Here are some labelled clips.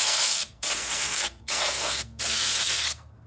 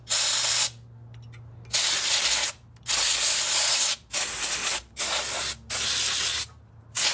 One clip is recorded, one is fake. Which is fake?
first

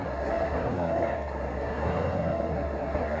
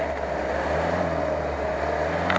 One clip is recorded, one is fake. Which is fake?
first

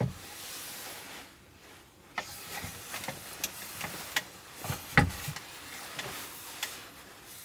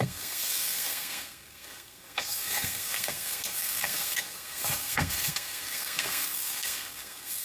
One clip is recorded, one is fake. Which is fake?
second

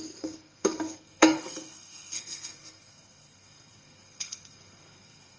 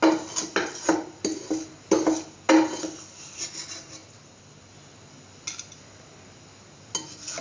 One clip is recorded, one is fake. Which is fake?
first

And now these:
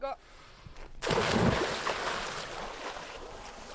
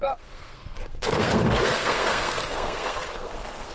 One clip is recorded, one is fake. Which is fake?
second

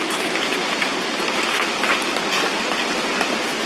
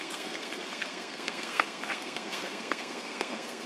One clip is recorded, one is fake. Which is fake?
second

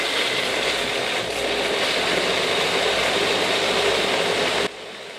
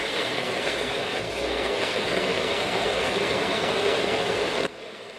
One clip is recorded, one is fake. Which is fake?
second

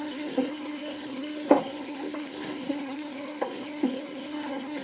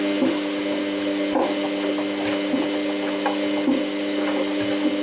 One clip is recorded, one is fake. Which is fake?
first